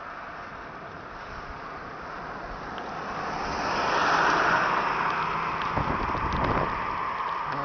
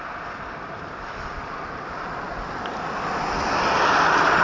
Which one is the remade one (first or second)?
second